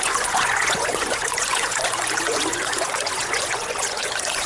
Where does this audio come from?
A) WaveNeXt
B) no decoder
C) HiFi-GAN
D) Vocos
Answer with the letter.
D